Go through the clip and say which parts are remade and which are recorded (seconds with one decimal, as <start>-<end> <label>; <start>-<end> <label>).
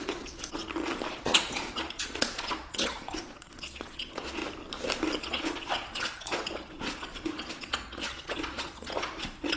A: 0.0-0.6 remade; 0.6-1.1 recorded; 1.1-4.4 remade; 4.4-5.2 recorded; 5.2-9.6 remade